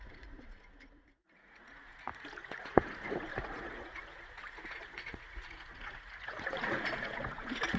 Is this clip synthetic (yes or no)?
yes